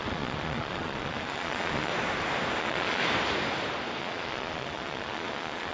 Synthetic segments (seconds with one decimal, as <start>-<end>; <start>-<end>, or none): 0.0-1.9; 2.6-3.0; 4.0-5.7